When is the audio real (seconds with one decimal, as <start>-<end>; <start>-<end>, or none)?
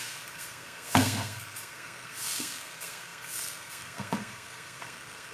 none